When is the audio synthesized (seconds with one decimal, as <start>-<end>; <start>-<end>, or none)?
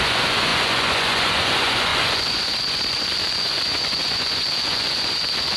0.0-5.6